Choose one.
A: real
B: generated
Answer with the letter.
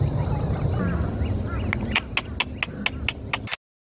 A